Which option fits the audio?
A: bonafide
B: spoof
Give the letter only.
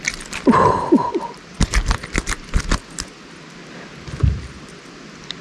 A